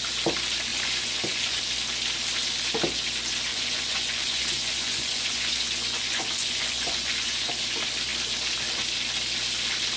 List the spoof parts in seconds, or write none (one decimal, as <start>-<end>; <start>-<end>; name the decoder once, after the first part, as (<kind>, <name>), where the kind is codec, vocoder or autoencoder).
0.7-1.6 (vocoder, Vocos); 3.5-7.5

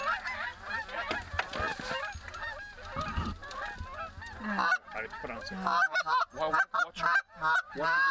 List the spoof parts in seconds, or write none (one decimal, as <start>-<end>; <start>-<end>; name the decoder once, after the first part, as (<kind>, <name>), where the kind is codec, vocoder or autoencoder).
none